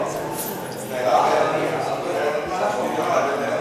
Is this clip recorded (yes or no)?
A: yes